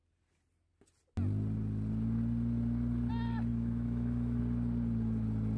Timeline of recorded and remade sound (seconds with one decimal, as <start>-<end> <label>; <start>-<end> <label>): 0.0-3.5 recorded; 3.5-4.4 remade; 4.4-5.6 recorded